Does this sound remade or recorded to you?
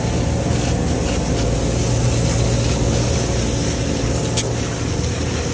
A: recorded